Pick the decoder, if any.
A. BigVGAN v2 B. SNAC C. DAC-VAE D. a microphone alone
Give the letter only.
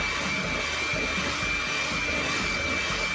D